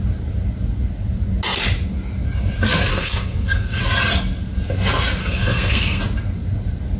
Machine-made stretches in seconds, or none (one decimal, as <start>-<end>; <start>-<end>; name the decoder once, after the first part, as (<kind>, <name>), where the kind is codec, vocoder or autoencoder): 2.9-3.8 (codec, SNAC); 5.2-6.0